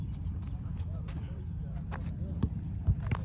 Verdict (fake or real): fake